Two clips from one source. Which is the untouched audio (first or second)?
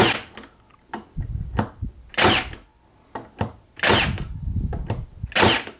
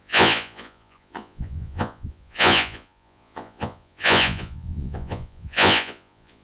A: first